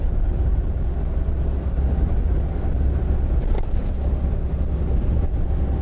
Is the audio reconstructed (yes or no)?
no